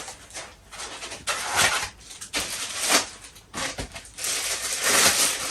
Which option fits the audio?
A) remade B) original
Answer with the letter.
B